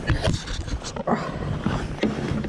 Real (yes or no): yes